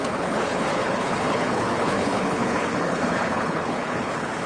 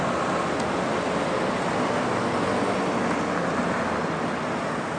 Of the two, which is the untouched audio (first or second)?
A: second